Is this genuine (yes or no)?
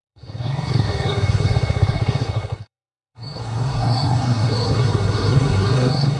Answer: no